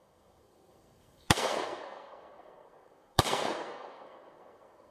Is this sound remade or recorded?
remade